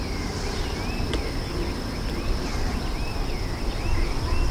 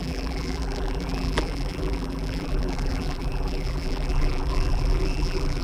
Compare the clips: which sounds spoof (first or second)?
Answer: second